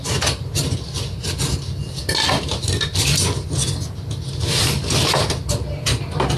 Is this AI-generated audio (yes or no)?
no